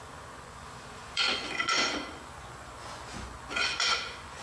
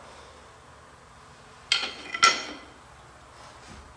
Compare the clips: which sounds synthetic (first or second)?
first